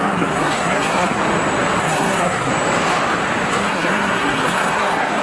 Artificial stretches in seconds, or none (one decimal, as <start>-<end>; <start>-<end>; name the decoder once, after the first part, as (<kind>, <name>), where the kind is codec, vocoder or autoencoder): 0.0-1.2 (codec, SNAC); 1.8-2.5; 3.5-5.2